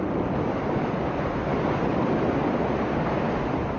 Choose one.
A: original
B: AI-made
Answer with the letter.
A